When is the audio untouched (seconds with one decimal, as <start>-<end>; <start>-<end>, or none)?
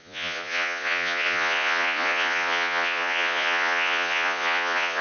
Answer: none